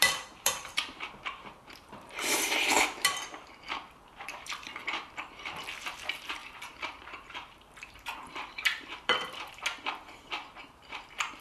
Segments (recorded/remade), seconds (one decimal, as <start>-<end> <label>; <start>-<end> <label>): 0.0-9.5 remade; 9.5-10.6 recorded; 10.6-11.4 remade